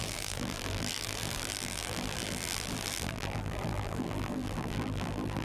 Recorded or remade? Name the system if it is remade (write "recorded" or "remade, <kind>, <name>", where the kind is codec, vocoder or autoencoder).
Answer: remade, vocoder, BigVGAN v2